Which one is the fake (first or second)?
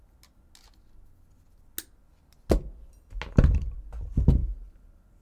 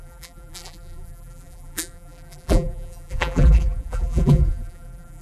second